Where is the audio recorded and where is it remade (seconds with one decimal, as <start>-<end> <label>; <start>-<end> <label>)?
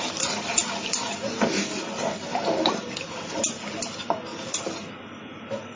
0.0-5.8 recorded